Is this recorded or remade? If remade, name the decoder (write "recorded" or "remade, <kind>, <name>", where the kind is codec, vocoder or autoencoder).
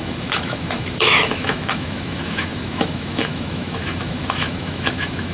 remade, autoencoder, DAC-VAE